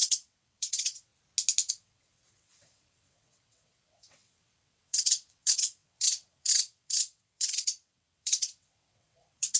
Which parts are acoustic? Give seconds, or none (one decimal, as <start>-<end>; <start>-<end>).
1.1-1.7